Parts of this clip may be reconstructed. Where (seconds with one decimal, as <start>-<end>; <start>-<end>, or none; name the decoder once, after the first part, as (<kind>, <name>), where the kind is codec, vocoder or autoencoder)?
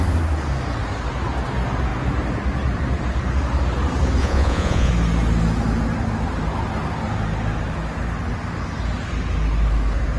4.2-4.9 (vocoder, Vocos)